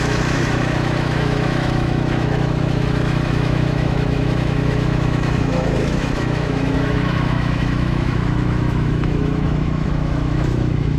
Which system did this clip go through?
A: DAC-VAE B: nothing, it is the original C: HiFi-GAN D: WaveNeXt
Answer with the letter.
A